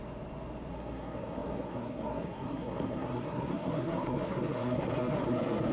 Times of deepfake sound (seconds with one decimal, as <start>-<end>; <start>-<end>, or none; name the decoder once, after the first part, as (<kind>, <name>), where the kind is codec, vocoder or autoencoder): 0.7-5.7 (codec, SNAC)

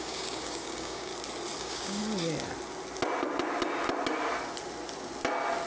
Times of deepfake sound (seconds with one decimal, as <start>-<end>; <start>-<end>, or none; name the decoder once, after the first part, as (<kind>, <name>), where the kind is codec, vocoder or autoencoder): 0.0-1.1 (codec, DAC); 1.6-2.0